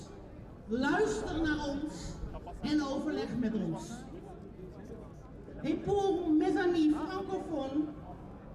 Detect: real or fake real